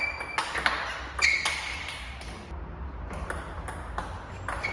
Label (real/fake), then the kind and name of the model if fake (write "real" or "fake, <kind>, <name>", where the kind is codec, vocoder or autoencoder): real